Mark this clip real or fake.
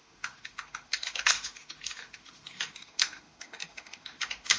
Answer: fake